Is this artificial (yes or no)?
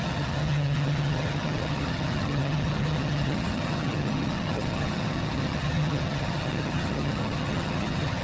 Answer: yes